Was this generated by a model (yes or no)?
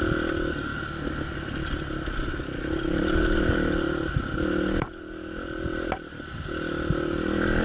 no